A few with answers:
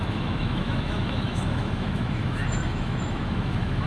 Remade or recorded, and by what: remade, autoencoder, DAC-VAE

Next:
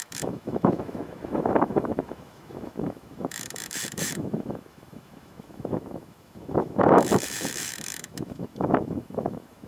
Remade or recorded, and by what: remade, autoencoder, DAC-VAE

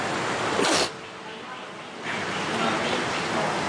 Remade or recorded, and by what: recorded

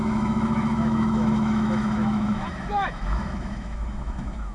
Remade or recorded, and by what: remade, autoencoder, DAC-VAE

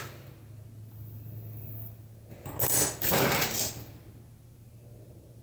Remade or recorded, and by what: recorded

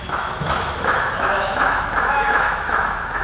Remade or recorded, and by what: remade, autoencoder, DAC-VAE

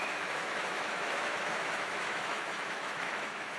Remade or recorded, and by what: remade, autoencoder, DAC-VAE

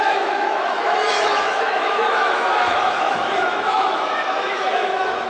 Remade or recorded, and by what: remade, autoencoder, DAC-VAE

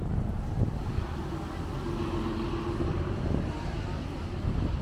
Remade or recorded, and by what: recorded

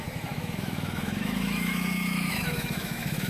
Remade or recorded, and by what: remade, autoencoder, DAC-VAE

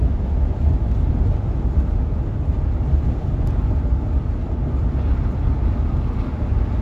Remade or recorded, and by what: recorded